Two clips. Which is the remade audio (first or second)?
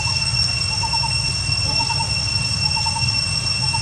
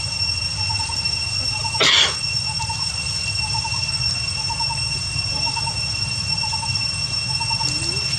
second